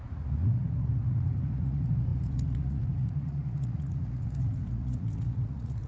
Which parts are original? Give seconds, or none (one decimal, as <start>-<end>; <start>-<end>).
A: none